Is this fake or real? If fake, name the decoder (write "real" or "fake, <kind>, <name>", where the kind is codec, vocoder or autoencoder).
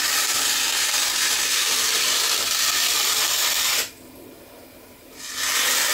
fake, vocoder, BigVGAN v2